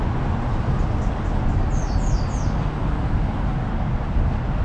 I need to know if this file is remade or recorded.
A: recorded